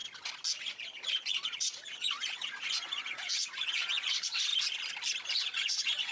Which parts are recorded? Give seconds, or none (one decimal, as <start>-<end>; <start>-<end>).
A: 0.0-0.6; 4.5-5.3